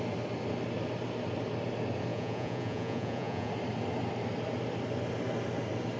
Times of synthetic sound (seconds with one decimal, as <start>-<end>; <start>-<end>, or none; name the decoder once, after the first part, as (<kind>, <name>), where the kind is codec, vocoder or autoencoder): 2.1-3.5 (vocoder, Vocos)